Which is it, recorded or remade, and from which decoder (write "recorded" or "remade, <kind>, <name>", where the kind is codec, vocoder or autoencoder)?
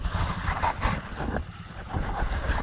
recorded